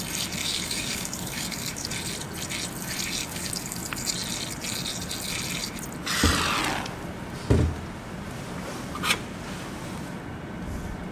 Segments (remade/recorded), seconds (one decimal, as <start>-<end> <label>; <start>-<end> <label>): 0.0-0.4 recorded; 0.4-1.9 remade; 1.9-3.2 recorded; 3.2-3.8 remade; 3.8-11.1 recorded